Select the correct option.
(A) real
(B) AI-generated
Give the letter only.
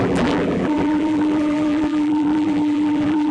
B